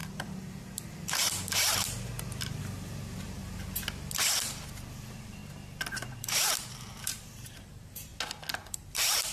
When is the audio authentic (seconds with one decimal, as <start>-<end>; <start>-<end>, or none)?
3.4-4.3; 5.4-5.9; 8.1-8.7